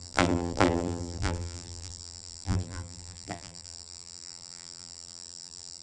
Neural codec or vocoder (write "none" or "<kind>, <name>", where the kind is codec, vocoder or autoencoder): vocoder, BigVGAN v2